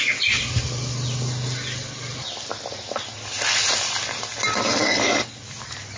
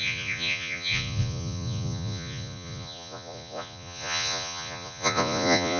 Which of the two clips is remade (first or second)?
second